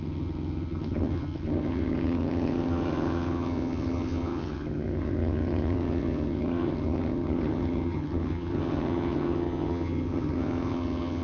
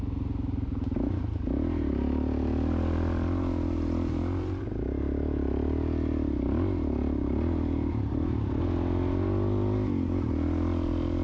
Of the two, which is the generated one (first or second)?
first